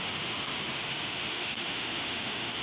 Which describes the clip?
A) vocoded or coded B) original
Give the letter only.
A